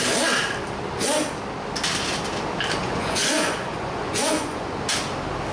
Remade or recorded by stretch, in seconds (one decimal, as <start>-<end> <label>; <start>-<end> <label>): 0.0-2.8 recorded; 2.8-4.7 remade; 4.7-5.5 recorded